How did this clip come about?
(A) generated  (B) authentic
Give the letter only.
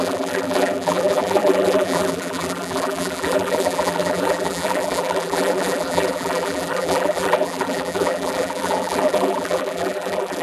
A